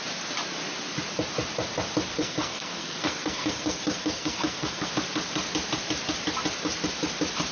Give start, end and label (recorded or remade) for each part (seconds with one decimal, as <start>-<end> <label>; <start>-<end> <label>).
0.0-2.1 recorded; 2.1-4.9 remade; 4.9-7.5 recorded